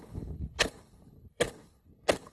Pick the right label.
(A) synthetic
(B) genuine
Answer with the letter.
A